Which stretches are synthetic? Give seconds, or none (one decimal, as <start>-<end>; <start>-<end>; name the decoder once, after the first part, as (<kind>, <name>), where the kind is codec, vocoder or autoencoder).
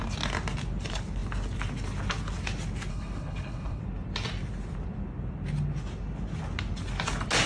2.9-3.8 (codec, HILCodec)